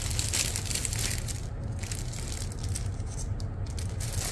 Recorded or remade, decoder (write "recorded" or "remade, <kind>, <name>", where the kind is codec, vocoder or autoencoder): recorded